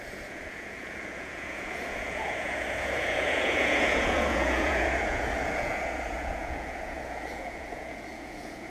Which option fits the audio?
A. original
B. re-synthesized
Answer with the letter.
B